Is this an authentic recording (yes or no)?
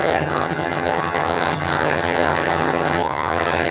no